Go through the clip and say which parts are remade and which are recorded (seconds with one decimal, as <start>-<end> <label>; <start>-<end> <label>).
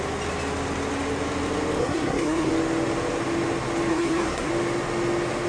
0.0-1.8 recorded; 1.8-2.5 remade; 2.5-3.9 recorded; 3.9-4.5 remade; 4.5-5.5 recorded